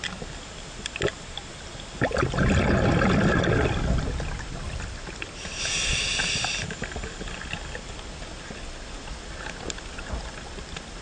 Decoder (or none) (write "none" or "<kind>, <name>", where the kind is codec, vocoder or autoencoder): none